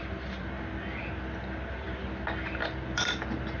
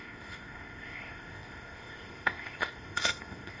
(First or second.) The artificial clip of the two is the second